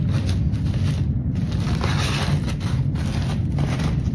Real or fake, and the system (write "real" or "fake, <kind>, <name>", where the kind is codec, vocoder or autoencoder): real